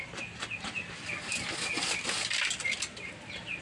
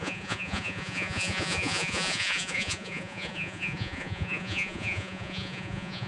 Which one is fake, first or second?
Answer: second